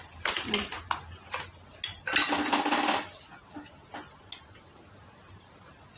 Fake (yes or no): no